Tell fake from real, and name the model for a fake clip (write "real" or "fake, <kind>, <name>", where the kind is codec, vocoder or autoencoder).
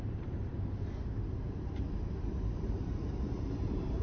fake, vocoder, BigVGAN v2